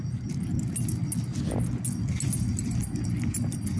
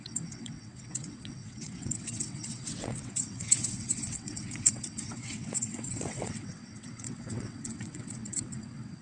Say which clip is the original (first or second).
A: first